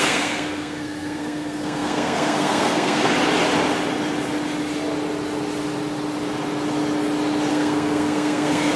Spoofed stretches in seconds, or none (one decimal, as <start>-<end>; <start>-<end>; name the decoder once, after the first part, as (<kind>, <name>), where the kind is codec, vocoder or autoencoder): 0.0-3.1 (codec, SNAC); 7.5-8.8